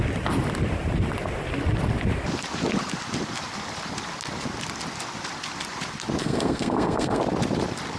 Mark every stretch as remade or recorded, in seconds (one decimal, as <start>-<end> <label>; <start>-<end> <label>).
0.0-6.2 recorded; 6.2-7.2 remade; 7.2-8.0 recorded